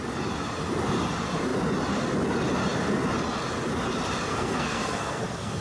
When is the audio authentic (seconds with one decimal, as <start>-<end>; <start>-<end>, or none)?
0.0-4.3